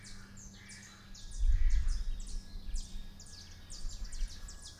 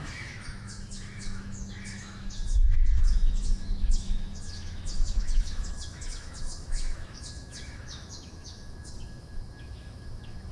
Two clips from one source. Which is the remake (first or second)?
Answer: second